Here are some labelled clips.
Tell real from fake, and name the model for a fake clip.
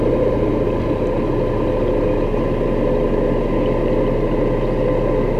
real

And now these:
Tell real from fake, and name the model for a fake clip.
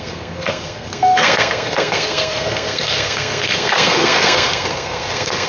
fake, codec, SNAC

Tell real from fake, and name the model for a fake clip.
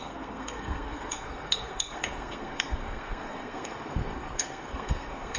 fake, codec, SNAC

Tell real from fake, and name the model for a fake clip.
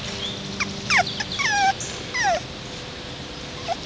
real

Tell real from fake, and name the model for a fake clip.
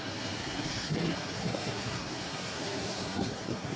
fake, codec, SNAC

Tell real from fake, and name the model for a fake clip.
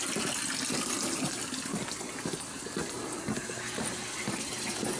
real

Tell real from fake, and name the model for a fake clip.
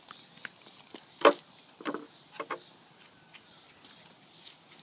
real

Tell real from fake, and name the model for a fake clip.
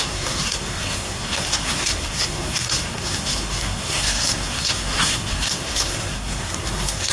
fake, codec, SNAC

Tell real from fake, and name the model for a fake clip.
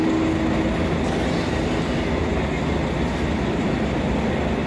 real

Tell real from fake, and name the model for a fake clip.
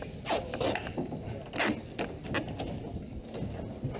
real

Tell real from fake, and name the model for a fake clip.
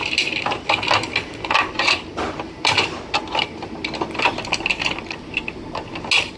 real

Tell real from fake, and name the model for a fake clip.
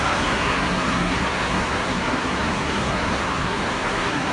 fake, codec, SNAC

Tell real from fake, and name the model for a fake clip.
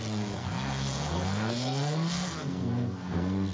fake, codec, SNAC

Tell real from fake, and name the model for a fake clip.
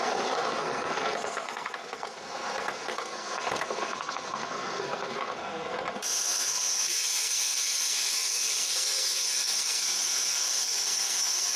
fake, codec, SNAC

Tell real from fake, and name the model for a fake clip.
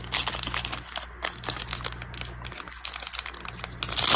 real